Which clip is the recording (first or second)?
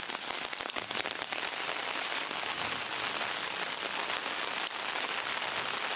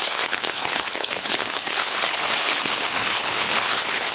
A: first